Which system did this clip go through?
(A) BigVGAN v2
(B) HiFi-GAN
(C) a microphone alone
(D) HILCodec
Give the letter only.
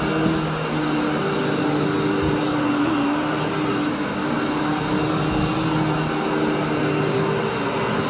C